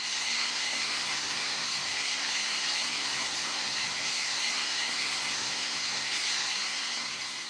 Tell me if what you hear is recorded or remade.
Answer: remade